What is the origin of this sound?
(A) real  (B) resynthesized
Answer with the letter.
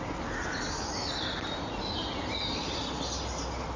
A